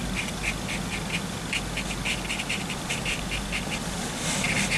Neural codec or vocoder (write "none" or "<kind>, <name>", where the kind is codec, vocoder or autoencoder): none